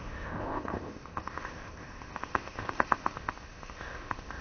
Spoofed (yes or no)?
yes